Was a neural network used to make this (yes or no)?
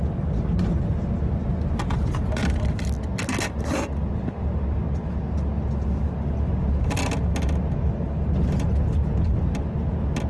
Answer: no